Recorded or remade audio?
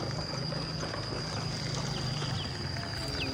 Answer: recorded